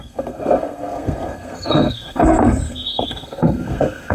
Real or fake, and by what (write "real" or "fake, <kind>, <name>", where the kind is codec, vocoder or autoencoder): fake, codec, SNAC